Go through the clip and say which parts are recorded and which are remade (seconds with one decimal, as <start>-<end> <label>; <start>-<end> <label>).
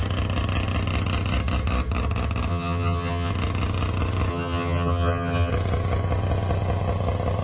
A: 0.0-2.5 recorded; 2.5-3.3 remade; 3.3-4.3 recorded; 4.3-5.5 remade; 5.5-7.4 recorded